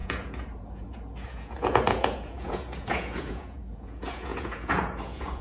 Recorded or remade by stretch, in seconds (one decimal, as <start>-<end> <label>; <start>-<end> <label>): 0.0-5.4 remade